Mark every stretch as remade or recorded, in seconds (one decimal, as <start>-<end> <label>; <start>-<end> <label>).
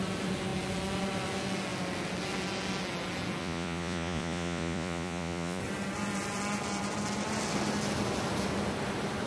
0.0-3.4 recorded; 3.4-5.6 remade; 5.6-9.3 recorded